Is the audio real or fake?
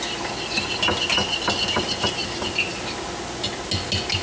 real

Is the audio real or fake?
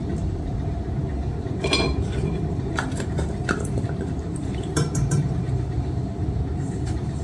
fake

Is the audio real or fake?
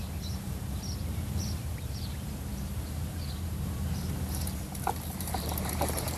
fake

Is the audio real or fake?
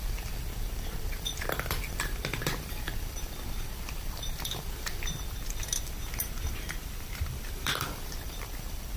fake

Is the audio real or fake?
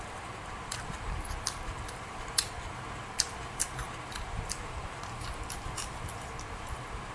fake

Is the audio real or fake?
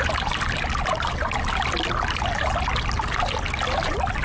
real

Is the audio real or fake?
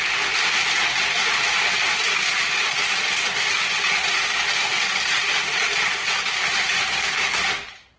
fake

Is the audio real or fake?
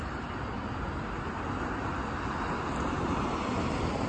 real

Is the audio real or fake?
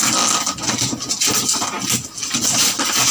real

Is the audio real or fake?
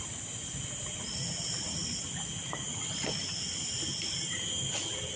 real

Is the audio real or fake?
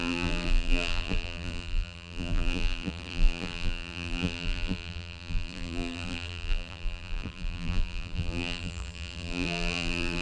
fake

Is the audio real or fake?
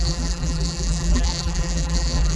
fake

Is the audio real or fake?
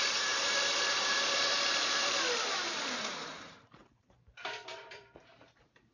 fake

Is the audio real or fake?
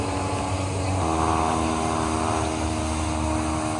real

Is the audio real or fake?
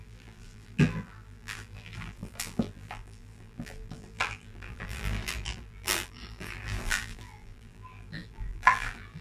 fake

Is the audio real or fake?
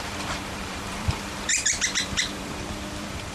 fake